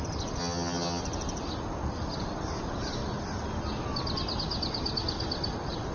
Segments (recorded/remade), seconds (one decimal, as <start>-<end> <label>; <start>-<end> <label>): 0.0-0.4 recorded; 0.4-1.0 remade; 1.0-5.9 recorded